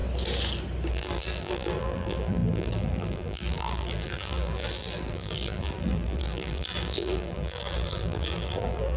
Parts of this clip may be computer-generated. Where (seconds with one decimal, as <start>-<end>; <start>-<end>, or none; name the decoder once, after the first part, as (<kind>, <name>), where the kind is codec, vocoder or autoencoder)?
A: 0.9-9.0 (vocoder, BigVGAN v2)